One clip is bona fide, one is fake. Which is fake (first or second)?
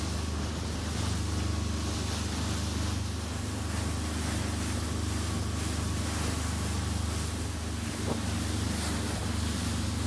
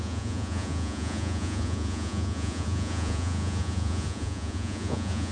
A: second